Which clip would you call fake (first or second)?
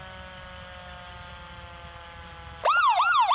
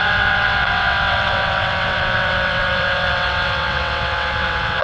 second